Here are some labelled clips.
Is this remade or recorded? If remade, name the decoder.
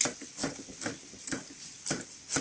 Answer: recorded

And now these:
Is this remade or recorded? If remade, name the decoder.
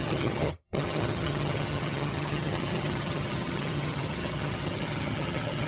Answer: remade, vocoder, HiFi-GAN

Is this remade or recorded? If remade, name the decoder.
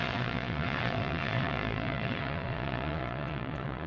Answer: remade, vocoder, Vocos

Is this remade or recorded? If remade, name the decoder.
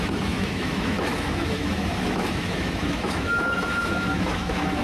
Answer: remade, autoencoder, DAC-VAE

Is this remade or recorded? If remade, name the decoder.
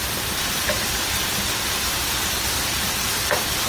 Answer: remade, vocoder, BigVGAN v2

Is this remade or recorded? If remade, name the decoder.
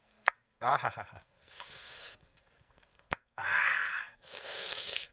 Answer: remade, codec, SNAC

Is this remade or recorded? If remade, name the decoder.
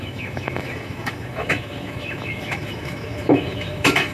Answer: remade, autoencoder, DAC-VAE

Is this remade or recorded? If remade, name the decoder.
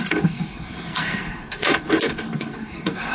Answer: remade, codec, SNAC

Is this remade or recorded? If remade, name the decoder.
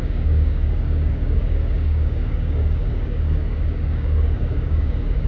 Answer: remade, codec, DAC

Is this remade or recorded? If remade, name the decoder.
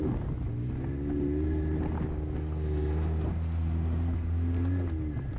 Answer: recorded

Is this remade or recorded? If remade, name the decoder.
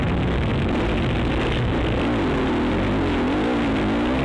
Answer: recorded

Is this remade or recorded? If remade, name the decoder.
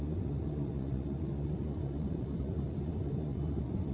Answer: remade, vocoder, Vocos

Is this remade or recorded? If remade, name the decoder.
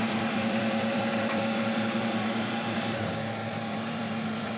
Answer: remade, vocoder, BigVGAN v2